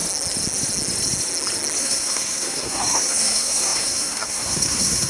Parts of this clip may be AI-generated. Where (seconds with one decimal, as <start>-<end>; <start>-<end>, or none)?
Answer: 1.8-5.1